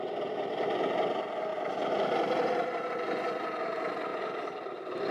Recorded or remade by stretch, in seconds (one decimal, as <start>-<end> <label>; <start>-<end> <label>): 0.0-4.1 recorded; 4.1-5.1 remade

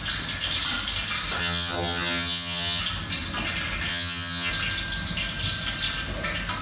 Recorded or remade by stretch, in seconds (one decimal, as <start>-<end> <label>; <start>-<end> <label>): 0.0-1.4 recorded; 1.4-2.8 remade; 2.8-3.9 recorded; 3.9-4.5 remade; 4.5-6.6 recorded

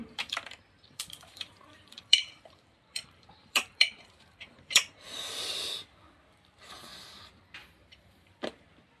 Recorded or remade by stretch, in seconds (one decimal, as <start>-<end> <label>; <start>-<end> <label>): 0.0-4.8 remade; 4.8-7.6 recorded; 7.6-8.5 remade; 8.5-9.0 recorded

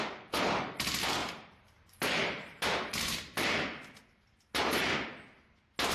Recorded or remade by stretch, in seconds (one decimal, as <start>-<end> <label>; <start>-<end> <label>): 0.0-1.2 recorded; 1.2-4.0 remade; 4.0-5.9 recorded

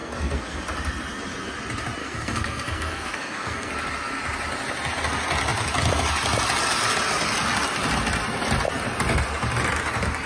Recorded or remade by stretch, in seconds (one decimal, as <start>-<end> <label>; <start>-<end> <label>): 0.0-0.6 remade; 0.6-2.0 recorded; 2.0-3.7 remade; 3.7-10.3 recorded

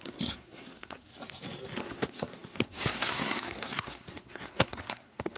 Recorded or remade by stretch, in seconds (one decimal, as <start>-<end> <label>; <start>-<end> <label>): 0.0-1.1 remade; 1.1-1.8 recorded; 1.8-5.4 remade